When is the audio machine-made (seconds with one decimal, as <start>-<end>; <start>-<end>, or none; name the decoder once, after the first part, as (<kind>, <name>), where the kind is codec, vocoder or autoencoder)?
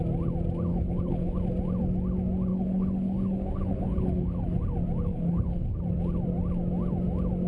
0.7-1.4 (codec, HILCodec); 2.5-4.6; 5.1-5.8